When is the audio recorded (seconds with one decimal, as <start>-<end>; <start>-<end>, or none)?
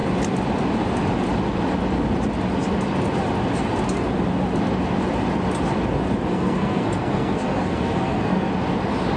0.0-6.3; 8.5-9.2